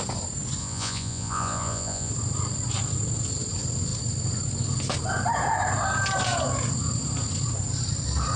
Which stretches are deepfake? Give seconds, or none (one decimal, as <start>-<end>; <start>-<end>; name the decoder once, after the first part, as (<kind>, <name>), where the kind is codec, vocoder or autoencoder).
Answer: 0.6-2.1 (vocoder, Vocos)